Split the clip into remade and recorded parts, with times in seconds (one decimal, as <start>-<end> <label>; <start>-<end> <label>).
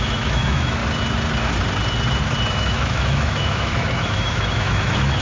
0.0-0.8 remade; 0.8-2.5 recorded; 2.5-5.2 remade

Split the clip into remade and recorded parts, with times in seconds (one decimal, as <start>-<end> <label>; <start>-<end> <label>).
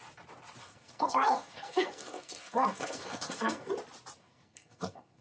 0.0-0.6 recorded; 0.6-3.7 remade; 3.7-4.2 recorded; 4.2-5.2 remade